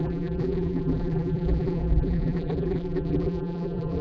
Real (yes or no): no